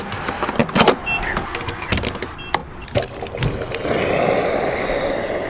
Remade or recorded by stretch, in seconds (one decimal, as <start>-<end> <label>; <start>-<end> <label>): 0.0-5.5 recorded